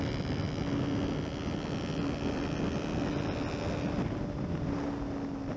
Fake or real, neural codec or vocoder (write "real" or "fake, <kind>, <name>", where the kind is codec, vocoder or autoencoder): real